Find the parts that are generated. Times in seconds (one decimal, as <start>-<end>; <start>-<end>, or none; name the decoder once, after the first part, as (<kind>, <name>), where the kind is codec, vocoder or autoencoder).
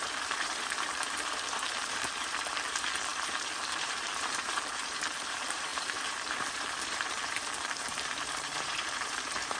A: 0.0-9.6 (vocoder, BigVGAN v2)